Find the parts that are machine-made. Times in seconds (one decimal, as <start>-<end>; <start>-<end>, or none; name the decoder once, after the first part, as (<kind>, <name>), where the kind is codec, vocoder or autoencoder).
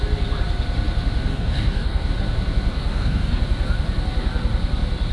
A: 1.3-2.1 (codec, DAC); 2.7-3.4